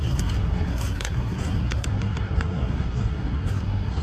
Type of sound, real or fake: fake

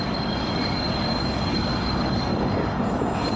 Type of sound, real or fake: fake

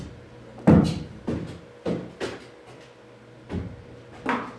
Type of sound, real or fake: real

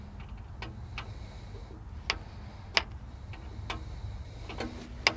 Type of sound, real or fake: real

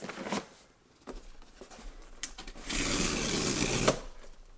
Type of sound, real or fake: real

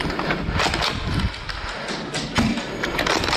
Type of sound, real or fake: real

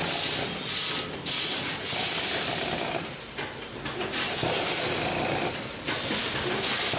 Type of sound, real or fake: real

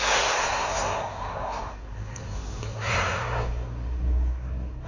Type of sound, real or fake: fake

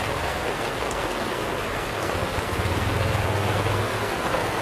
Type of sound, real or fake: fake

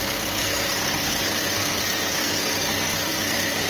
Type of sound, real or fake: fake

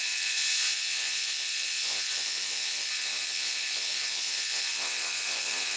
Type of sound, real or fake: fake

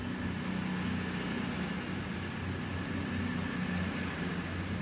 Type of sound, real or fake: real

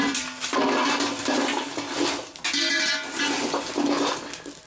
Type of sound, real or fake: real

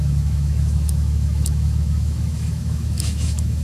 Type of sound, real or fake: fake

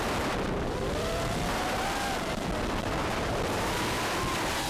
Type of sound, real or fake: fake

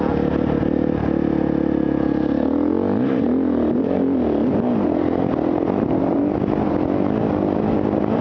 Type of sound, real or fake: real